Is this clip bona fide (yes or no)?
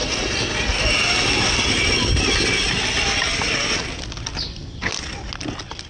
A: yes